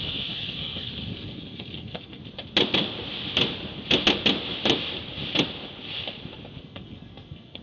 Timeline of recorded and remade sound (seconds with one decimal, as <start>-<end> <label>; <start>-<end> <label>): 0.0-2.2 remade; 2.2-6.6 recorded; 6.6-7.6 remade